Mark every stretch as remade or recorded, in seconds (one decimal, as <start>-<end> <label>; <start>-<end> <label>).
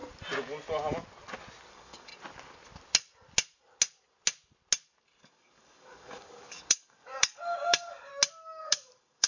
0.0-1.7 recorded; 1.7-2.1 remade; 2.1-5.2 recorded; 5.2-8.1 remade; 8.1-8.7 recorded; 8.7-9.3 remade